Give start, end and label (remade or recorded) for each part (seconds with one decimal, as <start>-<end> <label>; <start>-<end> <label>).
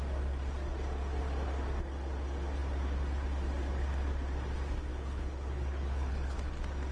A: 0.0-4.9 recorded; 4.9-6.5 remade; 6.5-6.9 recorded